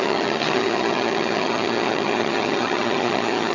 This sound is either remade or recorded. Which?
remade